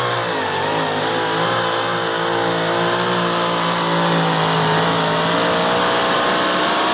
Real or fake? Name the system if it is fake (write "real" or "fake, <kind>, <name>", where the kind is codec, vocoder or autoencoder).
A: real